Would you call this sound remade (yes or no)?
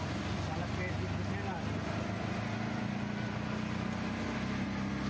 no